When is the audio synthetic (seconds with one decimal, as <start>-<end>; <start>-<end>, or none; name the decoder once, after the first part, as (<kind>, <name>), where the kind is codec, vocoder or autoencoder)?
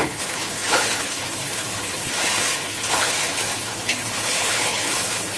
0.0-5.4 (codec, HILCodec)